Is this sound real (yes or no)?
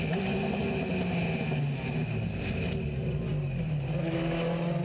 yes